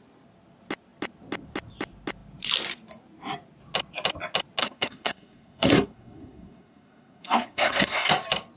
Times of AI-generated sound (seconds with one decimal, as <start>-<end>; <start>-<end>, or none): 4.6-8.1